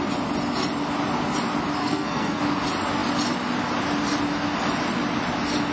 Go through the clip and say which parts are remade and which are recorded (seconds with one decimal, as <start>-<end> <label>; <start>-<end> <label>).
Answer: 0.0-1.8 recorded; 1.8-2.4 remade; 2.4-5.7 recorded